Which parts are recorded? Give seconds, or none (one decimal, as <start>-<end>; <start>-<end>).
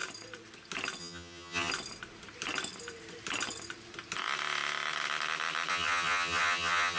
0.0-1.0; 1.7-5.7